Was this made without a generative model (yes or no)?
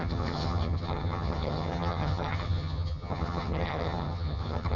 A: no